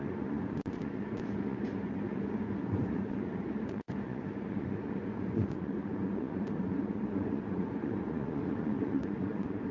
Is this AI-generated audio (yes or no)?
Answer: yes